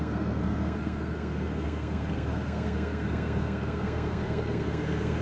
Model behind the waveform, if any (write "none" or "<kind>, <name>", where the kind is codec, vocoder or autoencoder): codec, SNAC